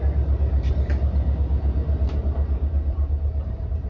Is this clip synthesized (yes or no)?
yes